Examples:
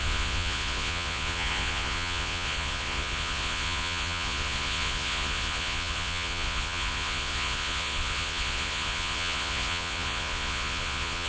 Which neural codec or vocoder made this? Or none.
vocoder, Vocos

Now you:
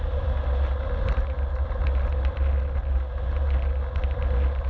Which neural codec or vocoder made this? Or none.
none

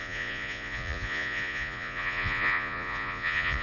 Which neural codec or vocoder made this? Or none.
vocoder, Vocos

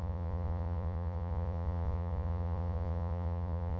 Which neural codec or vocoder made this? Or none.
vocoder, Vocos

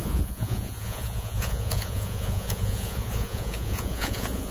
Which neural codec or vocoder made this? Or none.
vocoder, Vocos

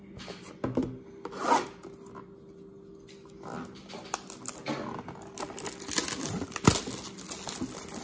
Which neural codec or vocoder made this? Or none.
none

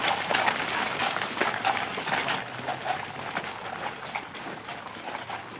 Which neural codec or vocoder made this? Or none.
none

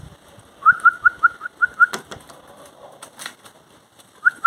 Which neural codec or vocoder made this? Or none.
none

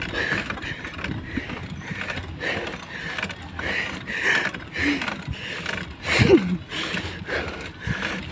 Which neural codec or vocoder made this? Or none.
none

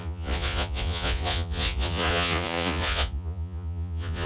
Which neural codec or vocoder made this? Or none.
vocoder, Vocos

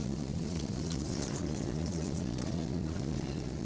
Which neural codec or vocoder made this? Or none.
vocoder, Vocos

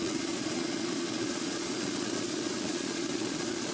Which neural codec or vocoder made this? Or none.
vocoder, Vocos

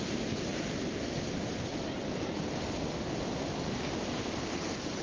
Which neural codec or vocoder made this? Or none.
none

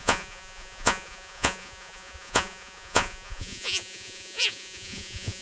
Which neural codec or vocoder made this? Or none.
vocoder, Vocos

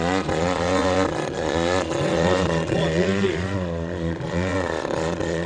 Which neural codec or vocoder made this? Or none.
vocoder, Vocos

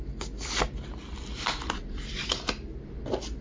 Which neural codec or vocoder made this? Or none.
none